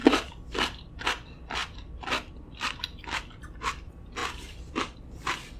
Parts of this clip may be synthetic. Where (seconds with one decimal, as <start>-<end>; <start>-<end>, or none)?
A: 0.0-1.0; 4.2-5.6

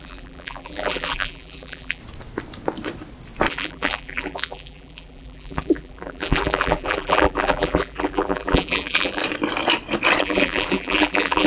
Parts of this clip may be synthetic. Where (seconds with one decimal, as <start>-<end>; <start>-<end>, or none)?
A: 0.0-2.0; 3.5-9.2; 10.2-11.5